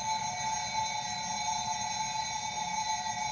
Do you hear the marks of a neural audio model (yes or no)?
no